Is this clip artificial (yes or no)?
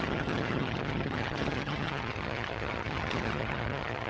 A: yes